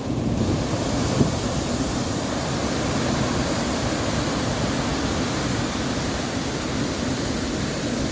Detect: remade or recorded recorded